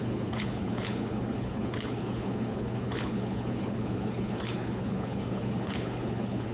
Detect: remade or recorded remade